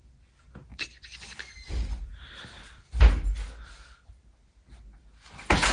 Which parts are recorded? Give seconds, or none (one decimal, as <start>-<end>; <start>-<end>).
0.0-5.7